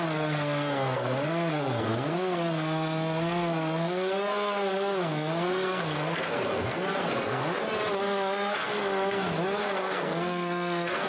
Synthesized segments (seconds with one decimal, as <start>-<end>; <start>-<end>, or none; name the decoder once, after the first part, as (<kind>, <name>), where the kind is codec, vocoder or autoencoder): 0.0-7.4 (codec, SNAC); 8.0-11.1